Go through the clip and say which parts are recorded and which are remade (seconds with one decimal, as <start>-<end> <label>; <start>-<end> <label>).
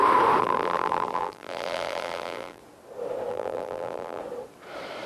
0.0-0.4 recorded; 0.4-2.6 remade; 2.6-3.3 recorded; 3.3-4.2 remade; 4.2-5.1 recorded